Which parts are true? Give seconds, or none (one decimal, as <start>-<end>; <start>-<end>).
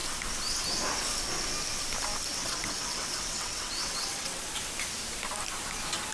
0.0-2.3; 4.4-6.1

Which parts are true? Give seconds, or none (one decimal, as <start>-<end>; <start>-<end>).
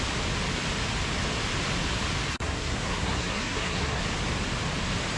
0.0-2.3; 4.0-5.2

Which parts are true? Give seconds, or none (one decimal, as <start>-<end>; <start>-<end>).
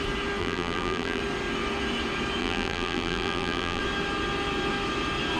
0.0-0.4; 1.2-2.4; 3.8-5.4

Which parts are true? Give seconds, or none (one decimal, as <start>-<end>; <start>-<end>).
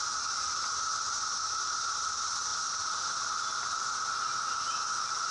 0.0-5.3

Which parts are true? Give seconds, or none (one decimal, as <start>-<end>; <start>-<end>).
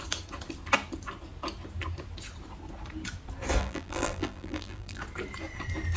0.0-3.6; 5.0-6.0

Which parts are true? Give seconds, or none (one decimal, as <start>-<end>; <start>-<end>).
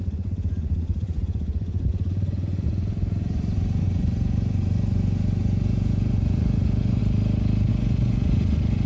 7.0-7.7